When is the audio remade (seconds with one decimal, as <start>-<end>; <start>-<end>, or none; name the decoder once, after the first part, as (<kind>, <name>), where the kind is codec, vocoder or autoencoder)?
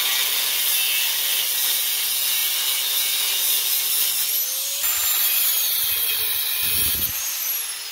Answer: none